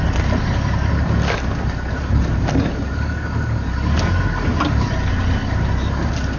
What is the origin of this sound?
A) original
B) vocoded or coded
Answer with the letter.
A